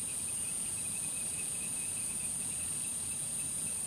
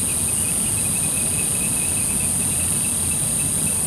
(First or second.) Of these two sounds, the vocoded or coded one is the first